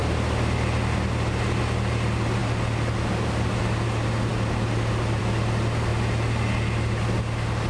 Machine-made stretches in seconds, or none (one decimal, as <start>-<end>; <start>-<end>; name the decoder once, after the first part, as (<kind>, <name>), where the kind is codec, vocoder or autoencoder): none